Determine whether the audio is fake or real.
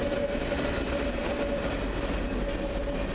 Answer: real